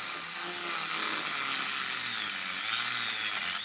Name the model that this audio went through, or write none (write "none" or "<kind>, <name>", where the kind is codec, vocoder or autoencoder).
none